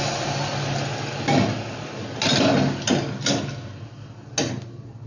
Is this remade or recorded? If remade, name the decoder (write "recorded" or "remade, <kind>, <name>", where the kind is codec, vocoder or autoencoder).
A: recorded